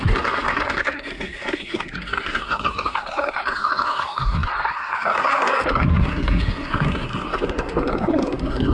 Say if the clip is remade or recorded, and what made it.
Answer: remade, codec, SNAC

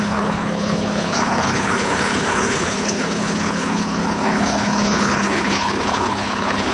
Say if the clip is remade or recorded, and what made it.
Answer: remade, codec, HILCodec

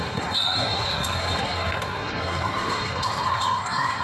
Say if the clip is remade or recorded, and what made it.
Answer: remade, codec, SNAC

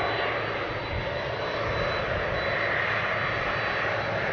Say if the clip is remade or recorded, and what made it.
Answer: recorded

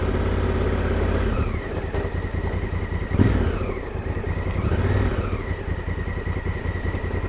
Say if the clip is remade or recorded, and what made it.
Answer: recorded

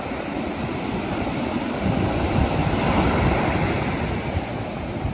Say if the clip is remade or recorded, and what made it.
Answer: remade, vocoder, BigVGAN v2